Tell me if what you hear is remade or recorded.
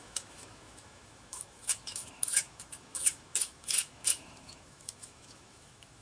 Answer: remade